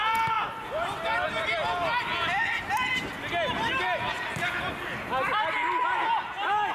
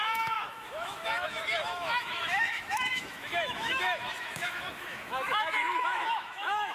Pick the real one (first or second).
first